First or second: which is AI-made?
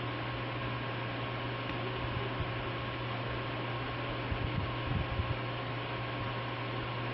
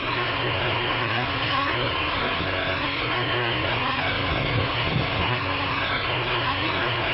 second